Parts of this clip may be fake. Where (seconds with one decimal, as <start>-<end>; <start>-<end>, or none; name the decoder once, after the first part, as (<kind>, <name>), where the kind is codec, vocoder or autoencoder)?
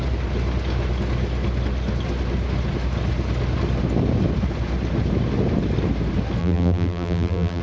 6.4-7.6 (vocoder, BigVGAN v2)